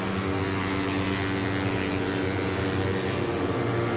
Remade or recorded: recorded